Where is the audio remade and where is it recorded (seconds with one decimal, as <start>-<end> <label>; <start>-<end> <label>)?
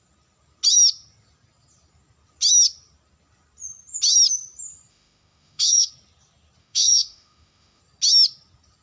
0.0-4.9 recorded; 4.9-5.9 remade; 5.9-6.6 recorded; 6.6-7.8 remade; 7.8-8.8 recorded